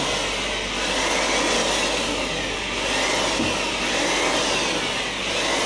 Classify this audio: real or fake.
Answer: real